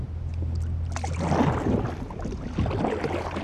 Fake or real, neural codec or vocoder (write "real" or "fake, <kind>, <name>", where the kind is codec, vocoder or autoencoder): real